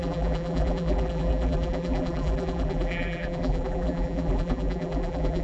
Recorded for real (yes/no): no